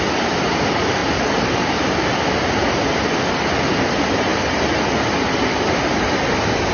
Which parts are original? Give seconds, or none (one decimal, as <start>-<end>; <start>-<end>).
4.3-5.4